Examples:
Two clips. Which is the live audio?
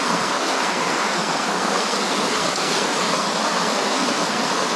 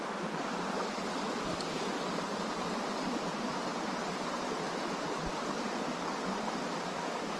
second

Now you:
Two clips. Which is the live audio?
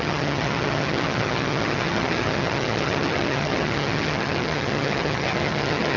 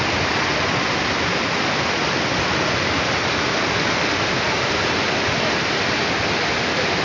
second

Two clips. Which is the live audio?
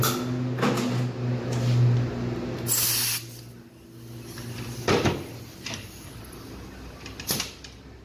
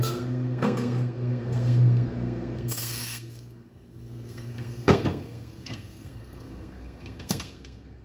first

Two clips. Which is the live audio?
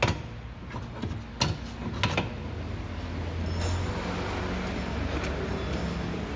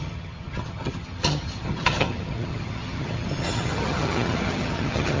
first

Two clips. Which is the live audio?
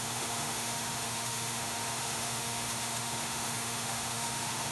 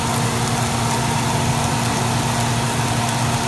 second